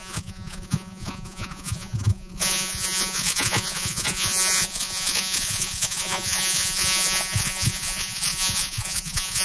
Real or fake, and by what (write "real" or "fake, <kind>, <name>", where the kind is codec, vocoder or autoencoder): fake, vocoder, Vocos